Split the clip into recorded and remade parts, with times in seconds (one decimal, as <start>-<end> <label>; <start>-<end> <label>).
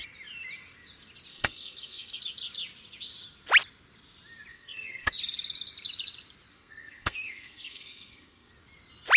0.0-1.3 recorded; 1.3-2.2 remade; 2.2-4.5 recorded; 4.5-5.1 remade; 5.1-6.5 recorded; 6.5-8.5 remade; 8.5-9.2 recorded